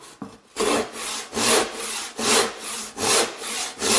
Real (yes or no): yes